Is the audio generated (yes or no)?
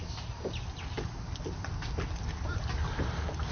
no